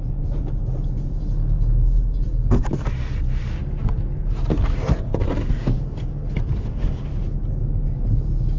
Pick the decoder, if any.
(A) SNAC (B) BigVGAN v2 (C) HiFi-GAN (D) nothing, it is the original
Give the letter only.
D